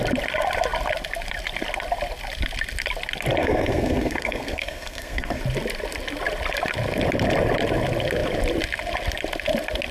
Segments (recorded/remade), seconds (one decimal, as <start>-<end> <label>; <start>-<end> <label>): 0.0-3.4 recorded; 3.4-5.4 remade; 5.4-9.9 recorded